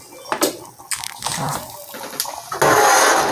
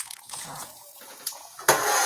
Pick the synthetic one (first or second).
second